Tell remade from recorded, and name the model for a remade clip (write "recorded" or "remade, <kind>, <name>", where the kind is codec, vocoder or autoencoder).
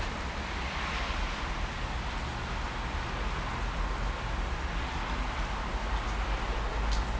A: recorded